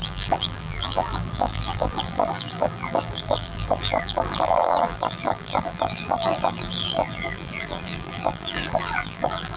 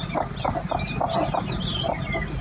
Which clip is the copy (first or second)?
first